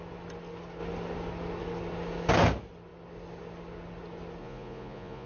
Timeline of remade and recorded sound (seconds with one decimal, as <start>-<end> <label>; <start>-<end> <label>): 0.0-4.4 recorded; 4.4-5.3 remade